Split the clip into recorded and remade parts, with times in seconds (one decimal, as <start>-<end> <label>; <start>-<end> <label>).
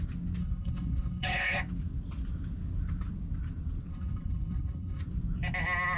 0.0-0.4 recorded; 0.4-1.6 remade; 1.6-3.9 recorded; 3.9-5.0 remade; 5.0-6.0 recorded